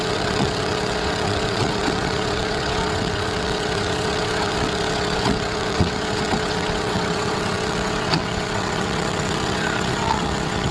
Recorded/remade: remade